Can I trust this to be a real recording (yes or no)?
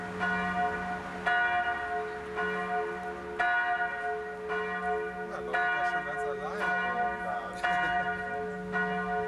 yes